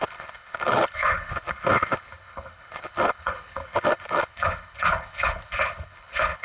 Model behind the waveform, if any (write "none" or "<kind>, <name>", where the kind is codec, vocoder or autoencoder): codec, HILCodec